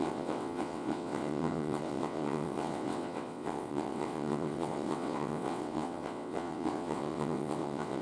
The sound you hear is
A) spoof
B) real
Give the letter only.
A